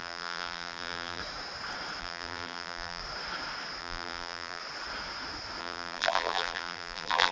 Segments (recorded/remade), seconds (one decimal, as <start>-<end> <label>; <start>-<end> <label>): 0.0-1.2 remade; 1.2-2.0 recorded; 2.0-3.0 remade; 3.0-3.8 recorded; 3.8-4.6 remade; 4.6-5.6 recorded; 5.6-7.3 remade